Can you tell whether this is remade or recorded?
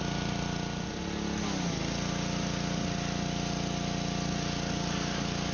recorded